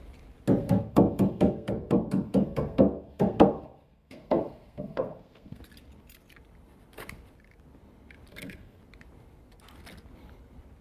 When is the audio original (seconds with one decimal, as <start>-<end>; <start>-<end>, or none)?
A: 0.0-0.6; 5.6-8.3; 8.8-10.8